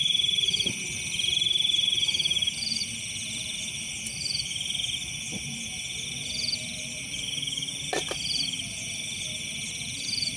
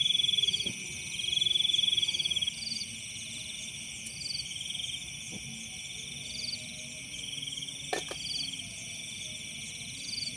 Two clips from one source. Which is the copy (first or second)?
first